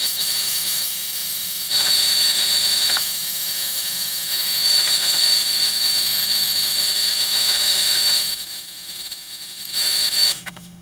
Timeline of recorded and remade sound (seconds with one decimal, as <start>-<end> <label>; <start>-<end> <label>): 0.0-10.8 remade